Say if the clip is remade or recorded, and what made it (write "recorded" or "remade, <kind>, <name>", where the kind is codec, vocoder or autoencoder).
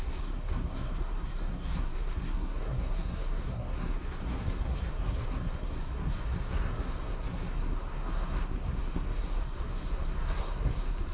remade, codec, SNAC